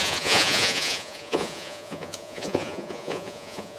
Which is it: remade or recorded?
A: remade